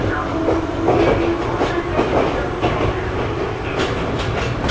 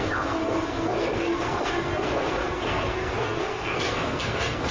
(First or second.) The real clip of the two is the first